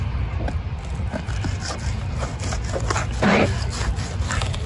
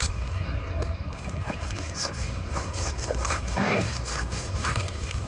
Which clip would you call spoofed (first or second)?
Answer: second